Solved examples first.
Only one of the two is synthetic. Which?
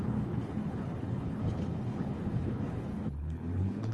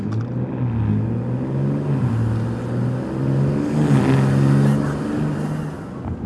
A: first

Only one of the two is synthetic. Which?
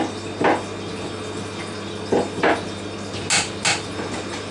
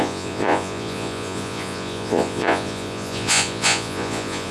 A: second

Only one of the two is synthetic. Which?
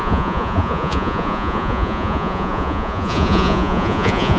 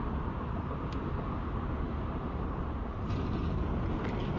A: first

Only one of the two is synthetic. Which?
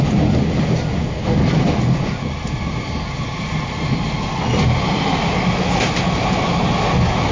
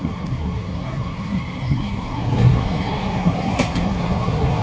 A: second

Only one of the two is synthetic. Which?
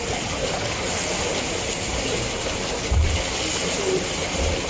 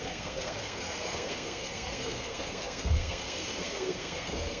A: second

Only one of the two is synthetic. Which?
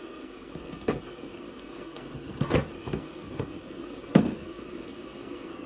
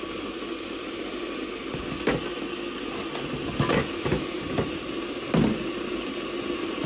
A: first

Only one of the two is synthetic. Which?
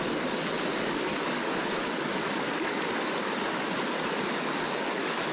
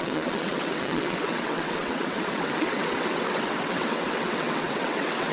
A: second